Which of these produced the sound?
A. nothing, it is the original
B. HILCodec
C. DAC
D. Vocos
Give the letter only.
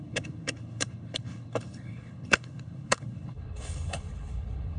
B